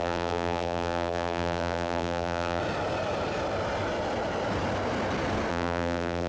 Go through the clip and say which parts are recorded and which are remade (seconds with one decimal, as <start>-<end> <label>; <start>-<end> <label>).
0.0-2.6 remade; 2.6-5.5 recorded; 5.5-6.3 remade